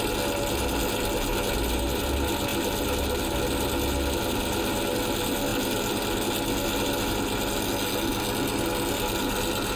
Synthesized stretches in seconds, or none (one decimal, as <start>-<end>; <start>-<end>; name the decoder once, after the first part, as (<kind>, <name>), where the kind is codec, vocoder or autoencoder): none